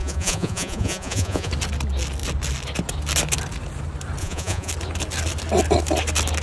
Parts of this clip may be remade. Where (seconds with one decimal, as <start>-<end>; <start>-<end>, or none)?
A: 0.0-1.5; 4.2-4.7